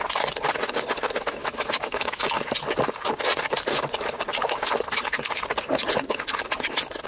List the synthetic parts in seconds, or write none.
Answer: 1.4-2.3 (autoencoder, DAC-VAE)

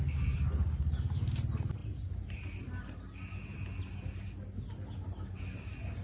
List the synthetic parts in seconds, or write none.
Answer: none